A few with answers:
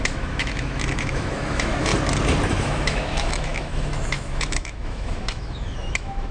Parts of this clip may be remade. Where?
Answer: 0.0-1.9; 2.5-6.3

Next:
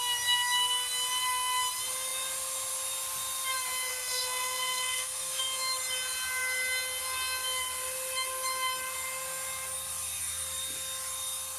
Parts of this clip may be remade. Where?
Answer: 3.9-5.4